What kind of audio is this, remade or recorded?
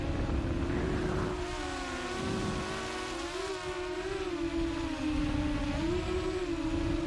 recorded